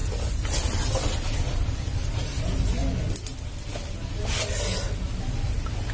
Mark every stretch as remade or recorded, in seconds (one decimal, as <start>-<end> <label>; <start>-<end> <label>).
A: 0.0-5.9 recorded